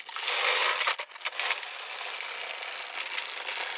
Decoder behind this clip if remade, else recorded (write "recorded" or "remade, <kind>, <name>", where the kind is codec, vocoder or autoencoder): recorded